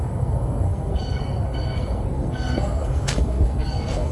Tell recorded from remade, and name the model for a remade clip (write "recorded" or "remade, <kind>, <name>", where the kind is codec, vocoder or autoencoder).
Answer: remade, codec, SNAC